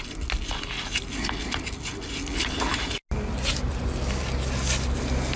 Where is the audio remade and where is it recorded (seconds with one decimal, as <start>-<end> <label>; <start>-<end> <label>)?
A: 0.0-5.4 recorded